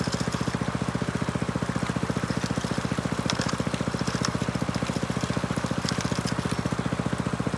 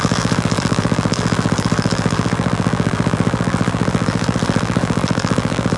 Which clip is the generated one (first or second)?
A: second